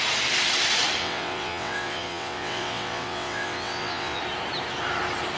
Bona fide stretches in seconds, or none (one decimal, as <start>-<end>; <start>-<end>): 0.0-1.0; 4.2-5.4